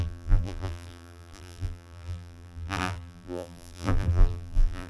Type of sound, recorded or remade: remade